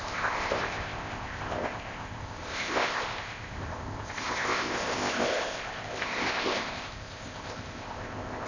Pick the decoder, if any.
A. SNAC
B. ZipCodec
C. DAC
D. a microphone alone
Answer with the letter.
B